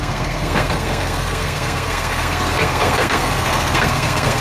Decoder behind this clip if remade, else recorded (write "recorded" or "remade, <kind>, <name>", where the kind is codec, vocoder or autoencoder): remade, codec, SNAC